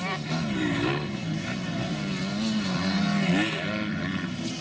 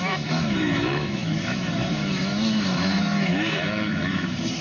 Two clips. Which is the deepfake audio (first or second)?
second